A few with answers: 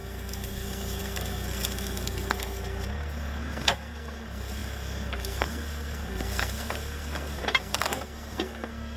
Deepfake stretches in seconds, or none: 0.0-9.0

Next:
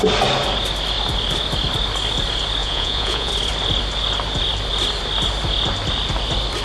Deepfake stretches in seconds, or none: 2.6-3.3

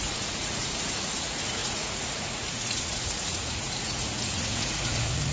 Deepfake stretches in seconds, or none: 0.0-5.3

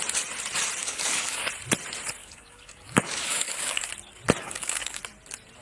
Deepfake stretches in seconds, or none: 0.8-1.5; 2.2-3.9; 4.4-5.0

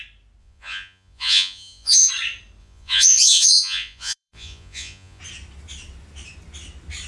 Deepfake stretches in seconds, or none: 0.4-2.1; 2.6-5.2